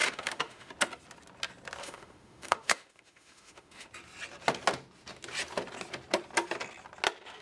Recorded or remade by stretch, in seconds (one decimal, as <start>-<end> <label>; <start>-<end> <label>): 0.0-0.7 remade; 0.7-1.8 recorded; 1.8-3.9 remade; 3.9-7.4 recorded